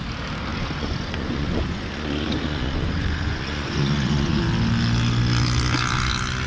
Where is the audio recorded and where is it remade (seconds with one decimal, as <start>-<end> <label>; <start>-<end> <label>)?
0.0-0.5 recorded; 0.5-4.4 remade; 4.4-6.5 recorded